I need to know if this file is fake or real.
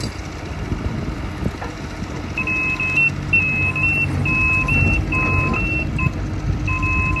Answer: real